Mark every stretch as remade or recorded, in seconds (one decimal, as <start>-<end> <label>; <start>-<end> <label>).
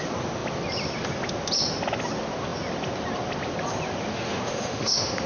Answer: 0.0-4.1 recorded; 4.1-5.3 remade